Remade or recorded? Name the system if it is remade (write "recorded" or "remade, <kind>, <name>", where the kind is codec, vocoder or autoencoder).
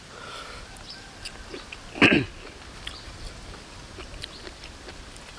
recorded